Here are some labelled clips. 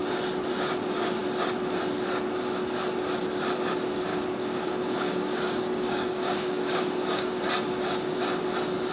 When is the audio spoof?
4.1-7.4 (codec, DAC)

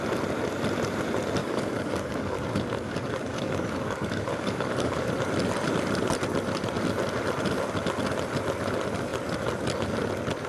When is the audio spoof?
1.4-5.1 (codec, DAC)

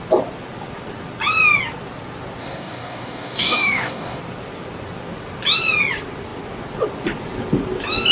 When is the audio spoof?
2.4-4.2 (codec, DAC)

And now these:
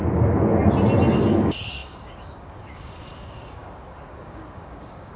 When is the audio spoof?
1.1-5.2 (codec, DAC)